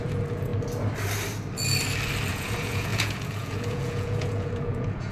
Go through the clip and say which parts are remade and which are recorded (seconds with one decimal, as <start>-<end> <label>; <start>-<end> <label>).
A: 0.0-0.5 remade; 0.5-2.3 recorded; 2.3-5.1 remade